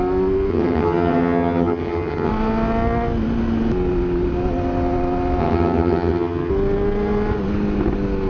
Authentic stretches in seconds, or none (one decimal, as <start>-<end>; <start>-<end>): 0.0-0.5; 2.3-5.4; 6.5-8.3